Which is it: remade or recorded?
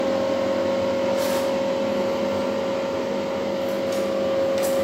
recorded